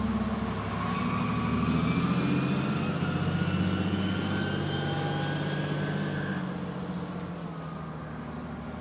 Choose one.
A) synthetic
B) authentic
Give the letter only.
B